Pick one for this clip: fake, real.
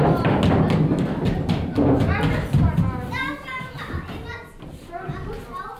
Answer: real